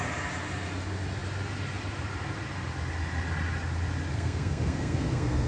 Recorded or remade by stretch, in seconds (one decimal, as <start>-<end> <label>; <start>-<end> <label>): 0.0-4.1 recorded; 4.1-5.5 remade